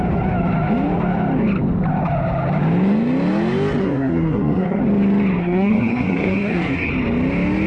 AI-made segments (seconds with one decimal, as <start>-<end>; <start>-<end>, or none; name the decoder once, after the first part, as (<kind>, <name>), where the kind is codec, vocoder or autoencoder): 3.8-4.8 (codec, SNAC); 5.4-6.9